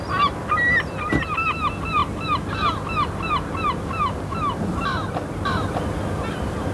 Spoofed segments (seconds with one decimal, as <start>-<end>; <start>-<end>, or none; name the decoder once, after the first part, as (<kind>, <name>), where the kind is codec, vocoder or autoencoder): none